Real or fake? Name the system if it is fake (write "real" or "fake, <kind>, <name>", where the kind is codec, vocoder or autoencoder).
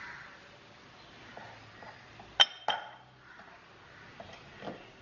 real